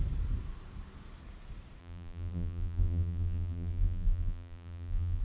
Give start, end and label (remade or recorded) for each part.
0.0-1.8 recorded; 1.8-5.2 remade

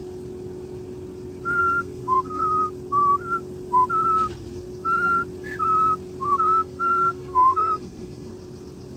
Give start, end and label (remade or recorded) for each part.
0.0-1.6 recorded; 1.6-2.4 remade; 2.4-6.4 recorded; 6.4-8.3 remade; 8.3-9.0 recorded

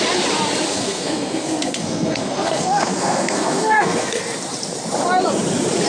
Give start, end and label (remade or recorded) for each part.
0.0-0.7 recorded; 0.7-4.2 remade; 4.2-5.9 recorded

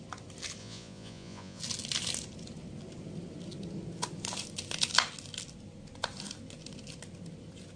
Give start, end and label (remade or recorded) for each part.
0.0-0.6 recorded; 0.6-1.6 remade; 1.6-7.8 recorded

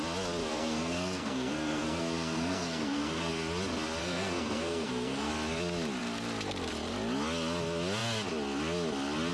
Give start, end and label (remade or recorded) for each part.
0.0-0.4 recorded; 0.4-3.3 remade; 3.3-4.0 recorded; 4.0-5.3 remade; 5.3-9.3 recorded

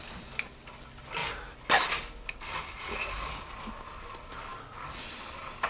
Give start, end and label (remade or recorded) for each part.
0.0-5.7 recorded

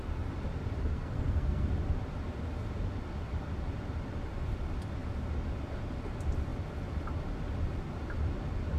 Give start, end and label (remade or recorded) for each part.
0.0-0.9 recorded; 0.9-1.7 remade; 1.7-8.8 recorded